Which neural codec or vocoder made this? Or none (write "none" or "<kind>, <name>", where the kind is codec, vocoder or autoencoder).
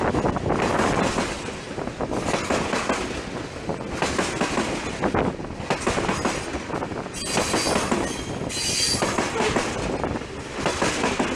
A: none